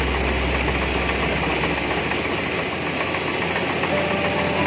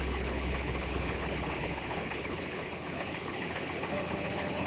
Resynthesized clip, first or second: second